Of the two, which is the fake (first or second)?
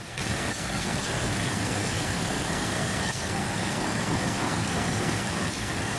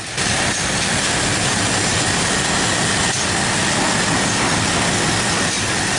first